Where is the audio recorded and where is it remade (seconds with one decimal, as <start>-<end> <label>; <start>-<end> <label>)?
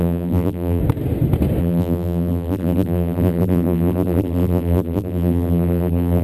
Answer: 0.0-0.8 remade; 0.8-1.6 recorded; 1.6-6.2 remade